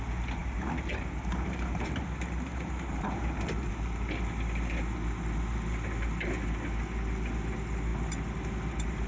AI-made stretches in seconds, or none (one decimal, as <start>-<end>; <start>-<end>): 0.4-2.0; 2.5-3.7